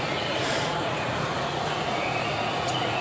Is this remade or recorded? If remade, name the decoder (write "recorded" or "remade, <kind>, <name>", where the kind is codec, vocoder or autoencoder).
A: remade, vocoder, Vocos